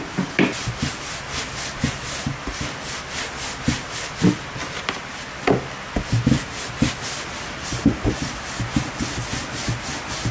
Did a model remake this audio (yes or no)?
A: no